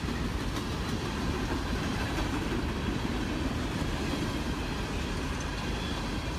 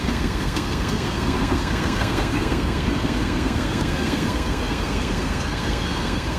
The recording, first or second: first